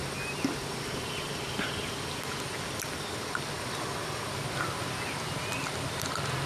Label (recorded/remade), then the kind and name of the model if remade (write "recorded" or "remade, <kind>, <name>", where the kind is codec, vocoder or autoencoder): recorded